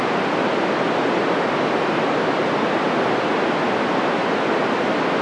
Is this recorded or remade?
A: recorded